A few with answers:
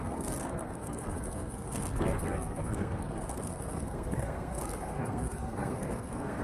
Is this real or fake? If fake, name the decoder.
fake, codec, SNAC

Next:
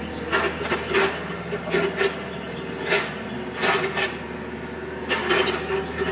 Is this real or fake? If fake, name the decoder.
real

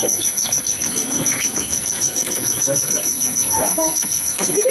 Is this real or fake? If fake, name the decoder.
fake, codec, SNAC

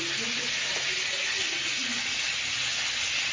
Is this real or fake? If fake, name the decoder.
real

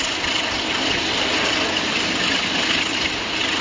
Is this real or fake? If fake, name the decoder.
real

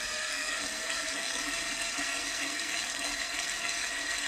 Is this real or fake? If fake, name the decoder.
fake, codec, SNAC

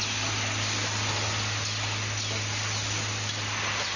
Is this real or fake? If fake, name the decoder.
real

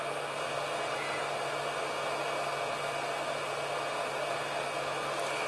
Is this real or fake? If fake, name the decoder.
real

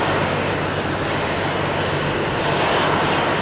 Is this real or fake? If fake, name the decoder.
real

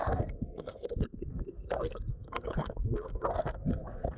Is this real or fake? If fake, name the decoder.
fake, codec, SNAC